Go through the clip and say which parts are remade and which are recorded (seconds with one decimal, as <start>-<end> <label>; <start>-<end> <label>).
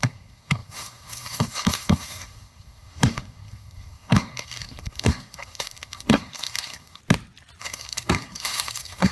0.0-7.0 remade; 7.0-7.6 recorded; 7.6-9.1 remade